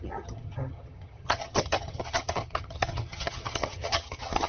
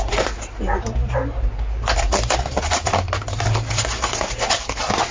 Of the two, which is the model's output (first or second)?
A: first